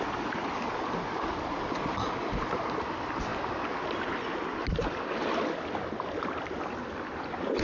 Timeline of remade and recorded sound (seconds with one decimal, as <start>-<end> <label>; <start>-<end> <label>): 0.0-7.6 recorded